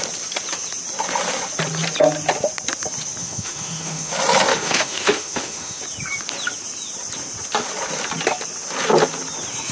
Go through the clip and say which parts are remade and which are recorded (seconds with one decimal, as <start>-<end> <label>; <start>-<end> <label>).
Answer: 0.0-3.2 recorded; 3.2-4.1 remade; 4.1-4.5 recorded; 4.5-5.8 remade; 5.8-9.7 recorded